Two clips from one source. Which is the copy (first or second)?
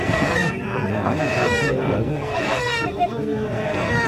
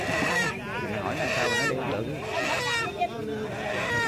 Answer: first